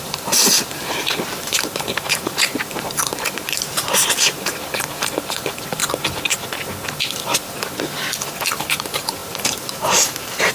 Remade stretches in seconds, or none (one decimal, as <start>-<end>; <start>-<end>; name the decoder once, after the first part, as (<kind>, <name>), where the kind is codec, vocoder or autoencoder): 0.0-5.8 (vocoder, BigVGAN v2); 8.6-10.5